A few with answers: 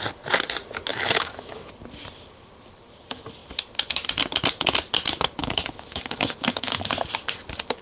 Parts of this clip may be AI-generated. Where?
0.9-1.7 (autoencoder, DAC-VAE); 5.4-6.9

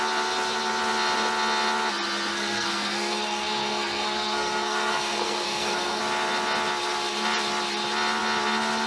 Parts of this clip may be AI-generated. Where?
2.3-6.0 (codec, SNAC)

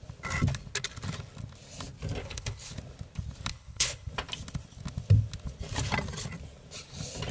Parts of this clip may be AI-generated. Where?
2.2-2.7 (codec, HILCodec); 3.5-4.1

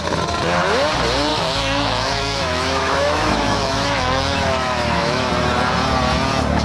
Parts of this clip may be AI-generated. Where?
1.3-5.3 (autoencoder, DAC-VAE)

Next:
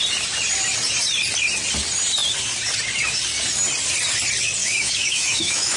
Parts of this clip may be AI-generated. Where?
4.6-5.8 (autoencoder, DAC-VAE)

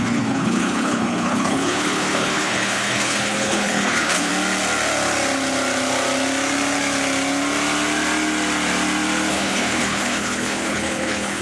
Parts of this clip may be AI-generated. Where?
0.0-4.3 (codec, HILCodec); 9.3-11.4

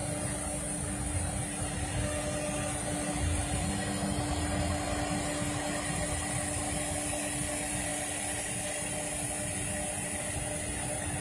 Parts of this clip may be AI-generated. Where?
none

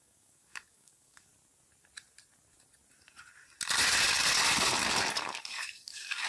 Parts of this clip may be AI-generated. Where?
0.0-1.3 (codec, DAC); 5.1-6.3